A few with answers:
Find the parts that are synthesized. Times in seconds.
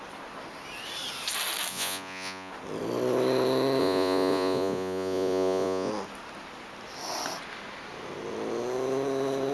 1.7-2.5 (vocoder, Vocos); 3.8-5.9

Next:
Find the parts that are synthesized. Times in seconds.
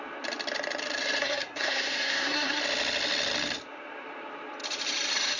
1.2-2.6 (codec, SNAC)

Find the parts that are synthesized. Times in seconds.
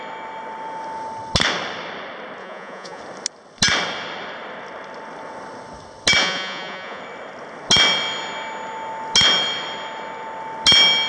2.4-3.0 (vocoder, Vocos); 6.2-7.0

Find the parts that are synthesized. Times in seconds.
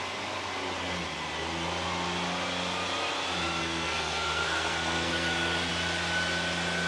3.6-5.7 (codec, SNAC)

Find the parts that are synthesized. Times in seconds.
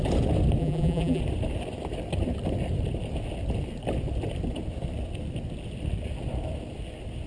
0.6-1.2 (vocoder, BigVGAN v2)